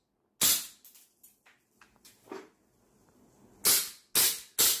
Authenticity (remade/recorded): recorded